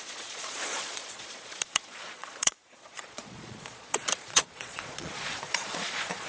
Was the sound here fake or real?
fake